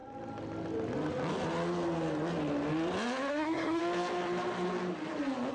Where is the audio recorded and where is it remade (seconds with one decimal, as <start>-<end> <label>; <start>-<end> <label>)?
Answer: 0.0-3.3 recorded; 3.3-3.8 remade; 3.8-5.5 recorded